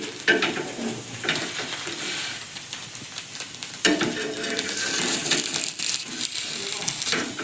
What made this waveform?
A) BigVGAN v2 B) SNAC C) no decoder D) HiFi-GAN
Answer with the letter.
A